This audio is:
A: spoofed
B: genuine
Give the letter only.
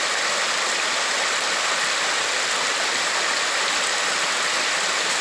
B